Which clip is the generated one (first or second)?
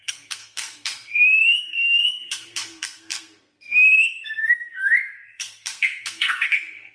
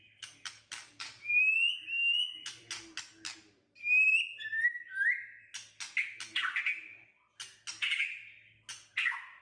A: first